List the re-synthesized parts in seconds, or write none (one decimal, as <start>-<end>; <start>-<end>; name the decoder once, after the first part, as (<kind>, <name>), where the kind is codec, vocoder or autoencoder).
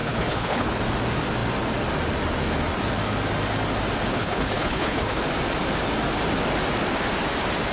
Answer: 0.0-0.8 (codec, HILCodec); 4.1-5.2